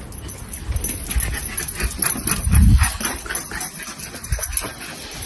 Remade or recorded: recorded